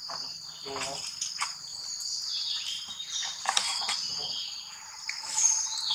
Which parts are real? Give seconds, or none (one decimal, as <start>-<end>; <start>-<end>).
0.0-1.7; 5.2-5.9